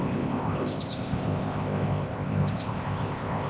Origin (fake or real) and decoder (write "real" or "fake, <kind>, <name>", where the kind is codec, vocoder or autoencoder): fake, codec, ZipCodec